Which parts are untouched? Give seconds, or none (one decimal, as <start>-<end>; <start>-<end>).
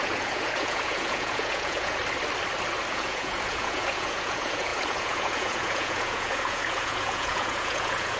2.0-2.9